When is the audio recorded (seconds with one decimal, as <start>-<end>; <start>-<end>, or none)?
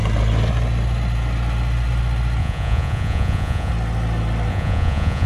0.0-2.4; 3.7-4.5